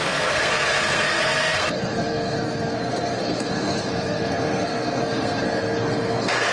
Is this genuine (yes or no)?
no